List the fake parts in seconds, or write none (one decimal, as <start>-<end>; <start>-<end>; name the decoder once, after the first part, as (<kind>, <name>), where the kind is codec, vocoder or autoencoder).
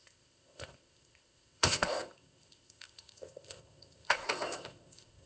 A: 0.0-5.3 (codec, ZipCodec)